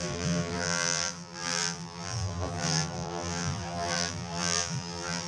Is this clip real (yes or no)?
no